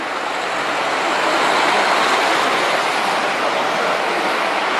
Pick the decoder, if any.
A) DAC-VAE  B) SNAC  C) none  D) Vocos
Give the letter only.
C